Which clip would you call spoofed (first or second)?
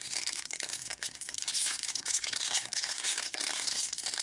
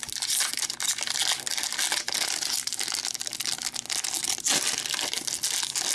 first